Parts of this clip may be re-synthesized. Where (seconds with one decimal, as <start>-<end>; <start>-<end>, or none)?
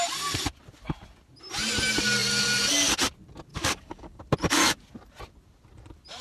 3.5-4.2